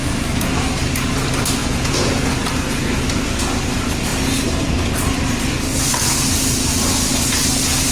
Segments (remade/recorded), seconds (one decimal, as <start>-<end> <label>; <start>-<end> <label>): 0.0-1.6 recorded; 1.6-2.3 remade; 2.3-7.9 recorded

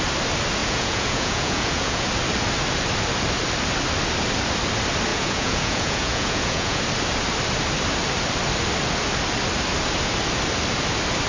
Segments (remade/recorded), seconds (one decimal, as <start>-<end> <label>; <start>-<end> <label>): 0.0-0.6 recorded; 0.6-2.1 remade; 2.1-5.1 recorded; 5.1-6.8 remade; 6.8-11.3 recorded

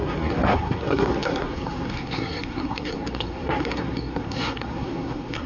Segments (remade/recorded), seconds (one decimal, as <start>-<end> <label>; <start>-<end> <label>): 0.0-5.5 remade

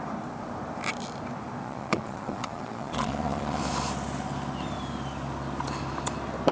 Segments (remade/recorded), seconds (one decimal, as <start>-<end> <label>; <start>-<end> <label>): 0.0-1.6 recorded; 1.6-3.6 remade; 3.6-6.5 recorded

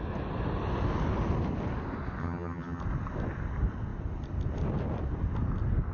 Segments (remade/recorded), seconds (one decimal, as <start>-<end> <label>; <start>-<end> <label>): 0.0-2.2 recorded; 2.2-2.8 remade; 2.8-5.9 recorded

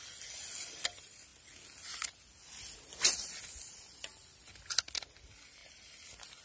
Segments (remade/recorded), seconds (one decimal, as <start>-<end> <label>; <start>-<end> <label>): 0.0-6.4 recorded

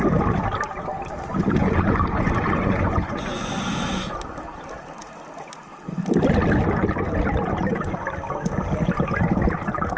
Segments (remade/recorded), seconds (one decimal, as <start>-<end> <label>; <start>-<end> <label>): 0.0-1.6 recorded; 1.6-3.6 remade; 3.6-10.0 recorded

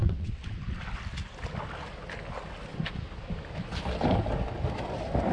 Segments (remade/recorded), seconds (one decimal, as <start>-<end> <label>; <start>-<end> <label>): 0.0-0.6 remade; 0.6-5.3 recorded